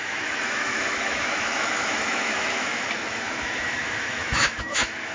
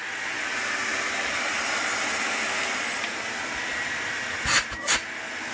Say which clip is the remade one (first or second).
first